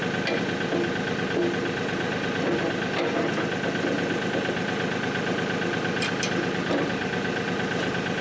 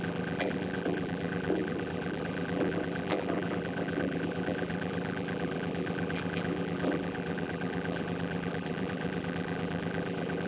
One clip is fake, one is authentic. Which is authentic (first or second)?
first